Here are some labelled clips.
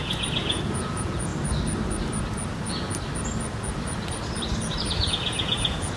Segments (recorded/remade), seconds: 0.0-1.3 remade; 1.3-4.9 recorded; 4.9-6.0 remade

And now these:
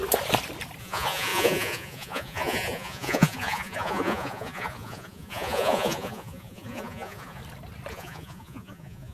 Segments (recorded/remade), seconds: 0.0-0.8 recorded; 0.8-7.4 remade; 7.4-7.9 recorded; 7.9-9.1 remade

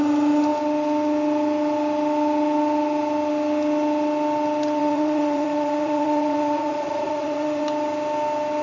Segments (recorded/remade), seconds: 0.0-4.8 recorded; 4.8-7.6 remade; 7.6-8.6 recorded